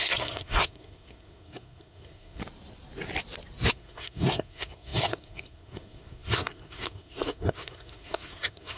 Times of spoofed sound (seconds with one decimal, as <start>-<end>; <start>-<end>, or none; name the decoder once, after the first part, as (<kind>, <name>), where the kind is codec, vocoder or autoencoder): 0.0-2.4 (codec, SNAC); 3.7-8.8